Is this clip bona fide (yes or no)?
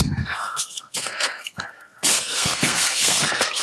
no